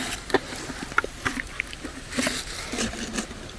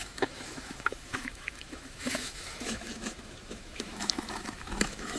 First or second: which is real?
first